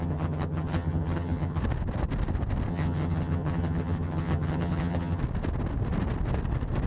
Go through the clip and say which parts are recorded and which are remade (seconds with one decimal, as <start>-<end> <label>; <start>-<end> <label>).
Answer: 0.0-1.6 remade; 1.6-2.7 recorded; 2.7-5.2 remade; 5.2-6.9 recorded

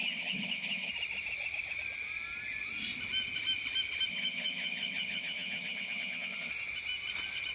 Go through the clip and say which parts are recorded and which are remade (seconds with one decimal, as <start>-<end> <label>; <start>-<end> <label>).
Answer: 0.0-0.9 remade; 0.9-4.1 recorded; 4.1-6.5 remade; 6.5-7.5 recorded